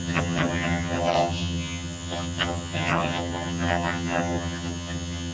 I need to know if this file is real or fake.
fake